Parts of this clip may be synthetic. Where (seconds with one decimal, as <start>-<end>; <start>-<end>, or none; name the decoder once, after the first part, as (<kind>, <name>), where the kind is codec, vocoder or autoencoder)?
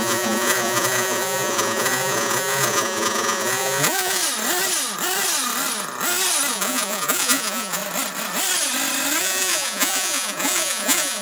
0.0-4.2 (vocoder, Vocos); 6.5-7.8; 9.2-11.2